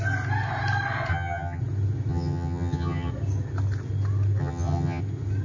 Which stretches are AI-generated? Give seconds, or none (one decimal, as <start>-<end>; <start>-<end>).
1.1-1.6; 2.1-3.1; 4.4-5.0